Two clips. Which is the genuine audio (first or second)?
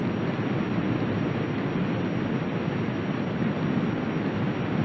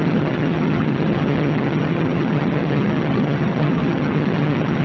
first